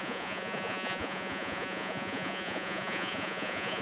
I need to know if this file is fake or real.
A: fake